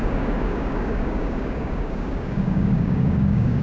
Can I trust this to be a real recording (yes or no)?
no